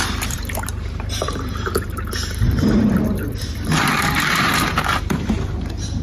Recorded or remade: remade